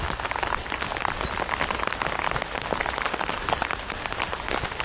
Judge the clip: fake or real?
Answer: real